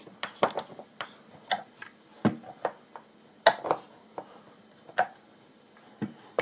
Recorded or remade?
recorded